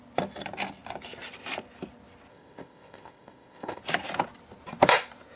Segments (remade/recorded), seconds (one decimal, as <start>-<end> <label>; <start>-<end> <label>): 0.0-2.3 recorded; 2.3-3.8 remade; 3.8-5.4 recorded